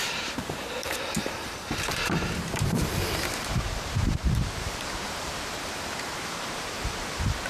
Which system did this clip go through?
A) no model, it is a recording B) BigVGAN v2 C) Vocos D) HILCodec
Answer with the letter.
B